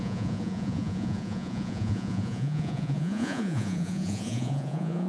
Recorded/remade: remade